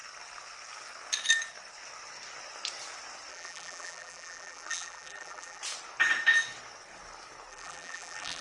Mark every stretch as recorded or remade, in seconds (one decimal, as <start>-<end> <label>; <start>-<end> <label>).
0.0-3.3 recorded; 3.3-5.6 remade; 5.6-7.5 recorded; 7.5-8.4 remade